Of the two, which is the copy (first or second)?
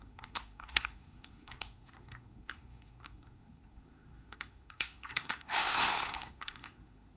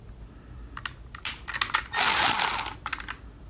first